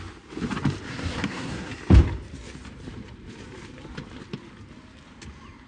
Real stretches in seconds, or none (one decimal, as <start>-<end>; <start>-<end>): 0.0-0.9; 1.7-5.7

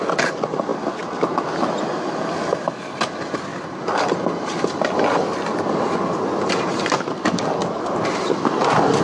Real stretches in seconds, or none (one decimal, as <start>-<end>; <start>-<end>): 0.0-9.0

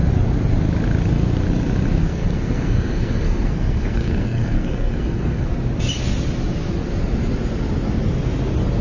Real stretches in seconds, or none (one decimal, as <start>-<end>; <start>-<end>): 0.0-2.0; 5.5-8.8